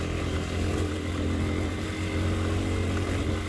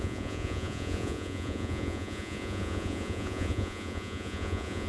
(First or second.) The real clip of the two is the first